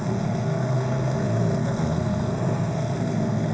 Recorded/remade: remade